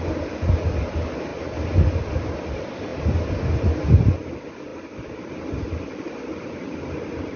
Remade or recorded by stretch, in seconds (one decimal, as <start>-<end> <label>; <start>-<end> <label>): 0.0-4.7 remade; 4.7-5.7 recorded; 5.7-7.4 remade